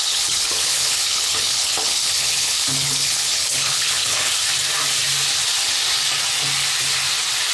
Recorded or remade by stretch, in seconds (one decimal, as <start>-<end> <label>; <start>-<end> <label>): 0.0-4.3 remade; 4.3-7.5 recorded